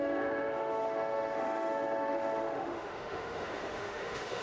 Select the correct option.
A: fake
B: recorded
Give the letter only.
A